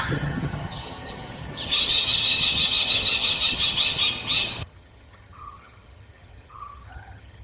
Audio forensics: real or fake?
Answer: fake